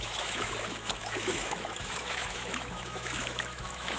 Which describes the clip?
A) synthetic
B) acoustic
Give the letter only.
A